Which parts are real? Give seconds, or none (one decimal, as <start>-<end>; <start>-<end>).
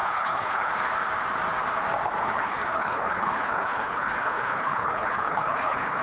0.7-2.2